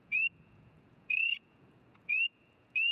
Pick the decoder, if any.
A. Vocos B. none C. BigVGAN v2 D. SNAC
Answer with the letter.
A